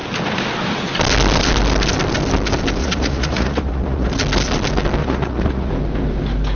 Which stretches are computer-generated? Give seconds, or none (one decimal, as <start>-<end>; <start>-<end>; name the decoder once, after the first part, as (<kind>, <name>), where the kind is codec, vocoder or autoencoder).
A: 2.8-4.1 (vocoder, Vocos); 5.0-5.7